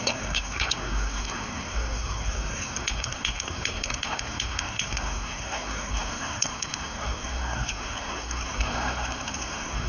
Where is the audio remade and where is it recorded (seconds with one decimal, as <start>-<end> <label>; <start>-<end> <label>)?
0.0-9.9 remade